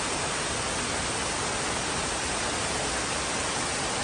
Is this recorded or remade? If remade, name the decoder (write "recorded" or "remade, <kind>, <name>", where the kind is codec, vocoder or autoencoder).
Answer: recorded